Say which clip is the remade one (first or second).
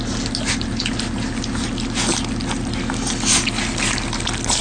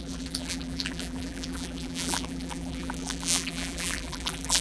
second